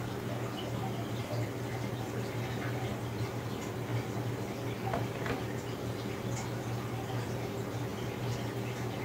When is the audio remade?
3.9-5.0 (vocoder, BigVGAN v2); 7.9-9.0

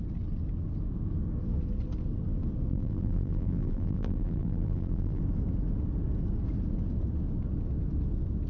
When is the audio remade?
2.7-5.2 (vocoder, BigVGAN v2)

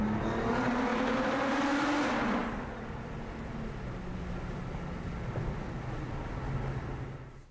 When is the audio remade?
0.9-1.9 (vocoder, BigVGAN v2)

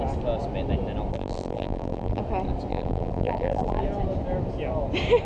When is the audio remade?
1.1-2.2 (vocoder, BigVGAN v2); 2.7-3.8

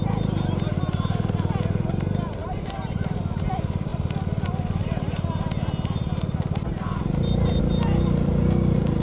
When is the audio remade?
2.4-3.2 (vocoder, BigVGAN v2)

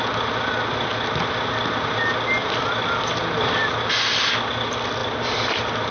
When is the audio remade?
2.4-3.0 (vocoder, BigVGAN v2); 5.0-5.9

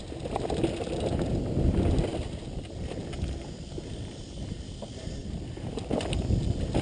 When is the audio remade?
none

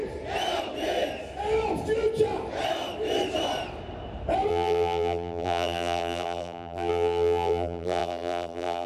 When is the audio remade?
4.5-8.9 (vocoder, BigVGAN v2)